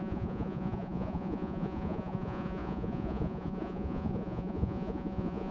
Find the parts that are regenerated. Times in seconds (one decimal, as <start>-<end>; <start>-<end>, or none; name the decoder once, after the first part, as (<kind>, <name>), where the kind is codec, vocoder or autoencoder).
0.0-5.5 (vocoder, Vocos)